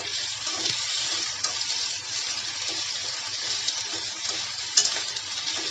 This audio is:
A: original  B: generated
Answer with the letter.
A